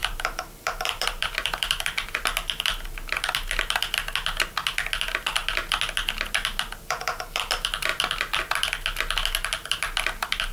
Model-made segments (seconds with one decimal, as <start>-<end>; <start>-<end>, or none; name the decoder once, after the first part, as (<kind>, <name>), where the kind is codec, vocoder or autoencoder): 0.0-2.2 (vocoder, BigVGAN v2)